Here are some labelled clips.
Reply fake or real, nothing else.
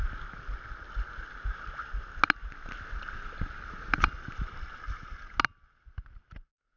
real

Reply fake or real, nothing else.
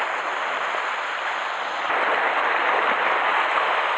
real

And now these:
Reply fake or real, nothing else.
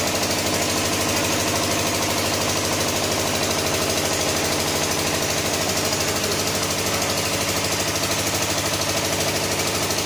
real